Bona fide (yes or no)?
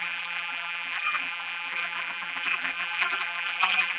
no